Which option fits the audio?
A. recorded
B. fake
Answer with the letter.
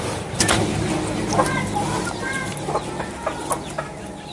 A